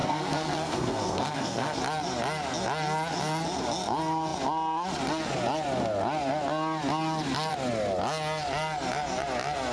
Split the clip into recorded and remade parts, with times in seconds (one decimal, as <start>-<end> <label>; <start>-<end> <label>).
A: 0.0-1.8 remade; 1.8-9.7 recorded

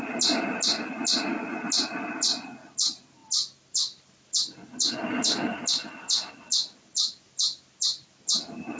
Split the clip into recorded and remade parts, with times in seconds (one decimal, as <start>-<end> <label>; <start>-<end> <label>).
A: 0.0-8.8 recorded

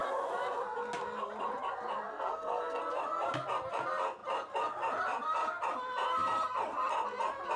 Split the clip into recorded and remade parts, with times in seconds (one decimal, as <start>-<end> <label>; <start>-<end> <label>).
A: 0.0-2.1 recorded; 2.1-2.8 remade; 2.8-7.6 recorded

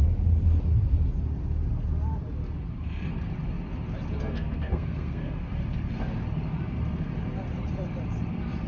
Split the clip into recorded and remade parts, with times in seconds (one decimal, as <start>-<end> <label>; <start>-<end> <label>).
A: 0.0-4.2 recorded; 4.2-5.5 remade; 5.5-8.7 recorded

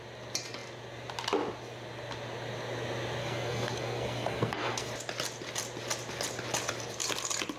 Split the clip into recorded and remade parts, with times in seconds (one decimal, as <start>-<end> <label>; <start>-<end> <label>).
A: 0.0-3.2 recorded; 3.2-4.9 remade; 4.9-7.6 recorded

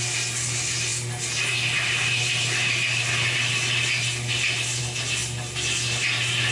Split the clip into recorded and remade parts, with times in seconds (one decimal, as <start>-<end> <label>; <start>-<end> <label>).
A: 0.0-6.5 recorded